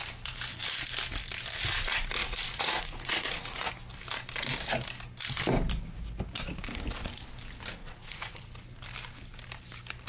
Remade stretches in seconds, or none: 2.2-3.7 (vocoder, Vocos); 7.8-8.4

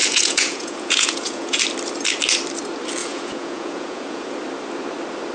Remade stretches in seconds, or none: 0.0-1.6 (vocoder, Vocos); 3.0-4.3

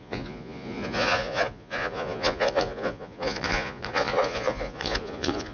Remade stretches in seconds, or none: 0.0-5.5 (vocoder, Vocos)

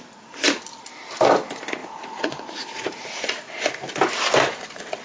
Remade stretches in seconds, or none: 1.8-3.8 (vocoder, Vocos)